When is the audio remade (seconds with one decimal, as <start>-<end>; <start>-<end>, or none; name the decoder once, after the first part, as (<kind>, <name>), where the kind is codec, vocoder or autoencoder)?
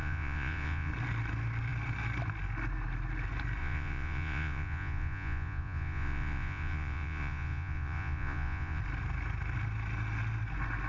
0.0-0.9 (vocoder, Vocos); 3.6-8.8